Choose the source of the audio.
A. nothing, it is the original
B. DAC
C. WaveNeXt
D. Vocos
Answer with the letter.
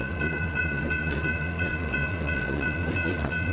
D